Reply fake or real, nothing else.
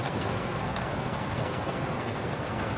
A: fake